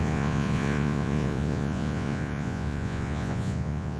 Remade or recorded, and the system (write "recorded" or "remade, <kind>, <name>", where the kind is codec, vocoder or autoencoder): remade, vocoder, Vocos